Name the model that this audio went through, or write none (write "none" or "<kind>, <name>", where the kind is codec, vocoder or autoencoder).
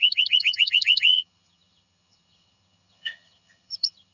vocoder, HiFi-GAN